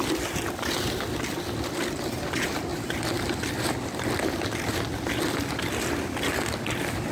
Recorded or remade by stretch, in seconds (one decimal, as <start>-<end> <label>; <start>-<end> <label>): 0.0-7.1 recorded